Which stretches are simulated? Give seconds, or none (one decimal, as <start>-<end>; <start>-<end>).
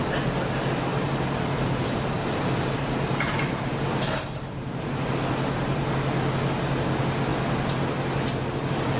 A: 0.9-4.9